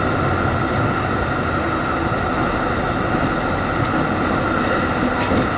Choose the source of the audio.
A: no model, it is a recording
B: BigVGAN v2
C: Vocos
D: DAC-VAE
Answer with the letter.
A